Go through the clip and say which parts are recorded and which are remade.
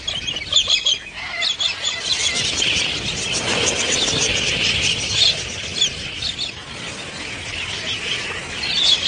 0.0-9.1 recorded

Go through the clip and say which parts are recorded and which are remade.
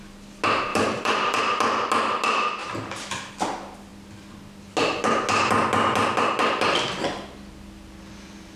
0.0-0.7 recorded; 0.7-1.4 remade; 1.4-2.6 recorded; 2.6-3.3 remade; 3.3-8.6 recorded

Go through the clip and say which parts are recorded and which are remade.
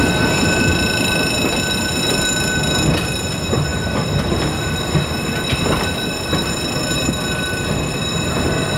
0.0-8.8 recorded